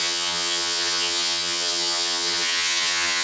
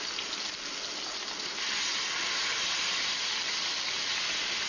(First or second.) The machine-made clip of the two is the first